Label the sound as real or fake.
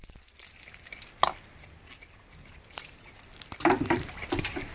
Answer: real